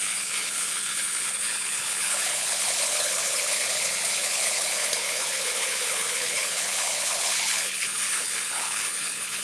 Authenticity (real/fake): fake